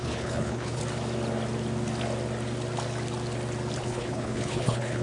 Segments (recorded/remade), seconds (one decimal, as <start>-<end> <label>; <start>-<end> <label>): 0.0-0.8 remade; 0.8-3.8 recorded; 3.8-5.0 remade

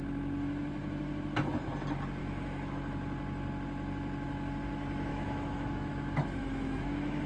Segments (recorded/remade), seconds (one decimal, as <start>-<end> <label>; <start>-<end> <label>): 0.0-2.2 recorded; 2.2-2.7 remade; 2.7-5.1 recorded; 5.1-5.9 remade; 5.9-6.4 recorded; 6.4-7.3 remade

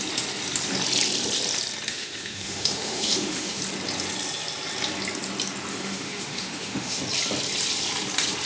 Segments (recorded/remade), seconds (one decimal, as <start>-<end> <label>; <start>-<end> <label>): 0.0-1.9 recorded; 1.9-3.6 remade; 3.6-5.7 recorded; 5.7-7.0 remade; 7.0-8.5 recorded

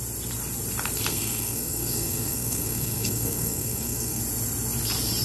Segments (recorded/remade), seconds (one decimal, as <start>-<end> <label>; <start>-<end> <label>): 0.0-1.1 recorded; 1.1-4.2 remade; 4.2-5.2 recorded

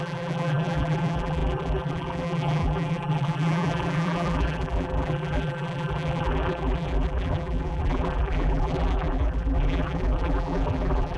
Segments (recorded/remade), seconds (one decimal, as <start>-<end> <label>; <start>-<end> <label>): 0.0-11.2 remade

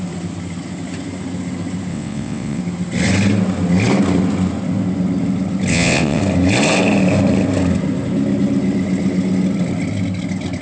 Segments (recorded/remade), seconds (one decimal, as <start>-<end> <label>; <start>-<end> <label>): 0.0-1.9 recorded; 1.9-2.6 remade; 2.6-5.7 recorded; 5.7-6.2 remade; 6.2-10.6 recorded